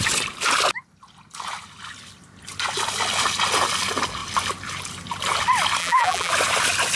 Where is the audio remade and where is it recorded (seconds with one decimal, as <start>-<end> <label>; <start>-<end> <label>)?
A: 0.0-5.8 recorded; 5.8-6.3 remade; 6.3-7.0 recorded